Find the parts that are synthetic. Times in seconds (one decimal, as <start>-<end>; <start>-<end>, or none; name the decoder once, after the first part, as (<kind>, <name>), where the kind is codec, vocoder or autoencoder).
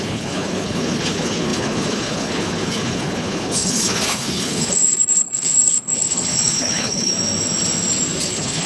0.0-7.1 (codec, HILCodec); 8.2-8.7